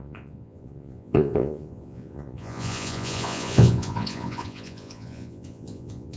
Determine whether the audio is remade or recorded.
remade